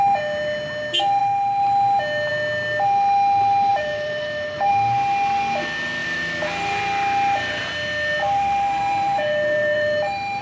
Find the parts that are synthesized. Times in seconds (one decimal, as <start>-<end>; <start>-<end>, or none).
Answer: 3.7-4.7; 6.0-6.8; 8.2-10.4